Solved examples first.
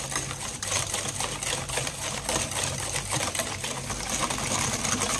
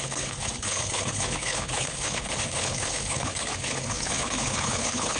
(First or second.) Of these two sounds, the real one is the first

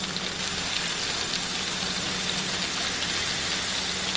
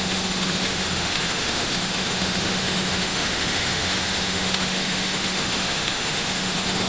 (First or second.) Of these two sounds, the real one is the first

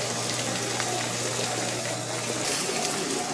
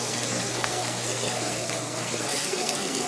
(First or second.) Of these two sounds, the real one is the first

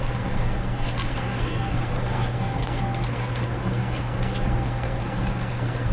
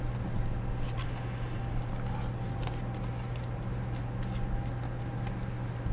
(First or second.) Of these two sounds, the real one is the second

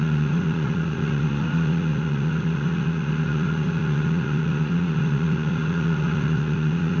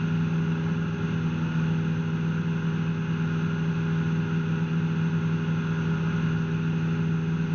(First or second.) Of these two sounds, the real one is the second